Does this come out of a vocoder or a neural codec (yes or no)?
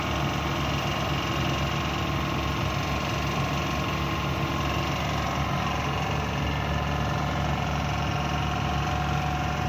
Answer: no